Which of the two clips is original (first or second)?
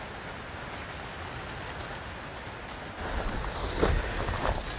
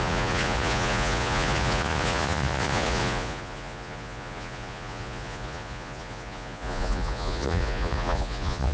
first